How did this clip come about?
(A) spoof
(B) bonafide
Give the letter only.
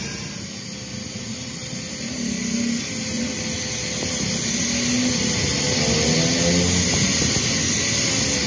B